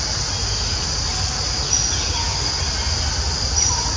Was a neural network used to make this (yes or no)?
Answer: no